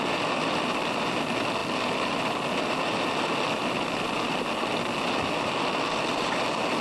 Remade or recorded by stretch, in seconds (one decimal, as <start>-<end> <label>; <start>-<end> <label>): 0.0-6.8 recorded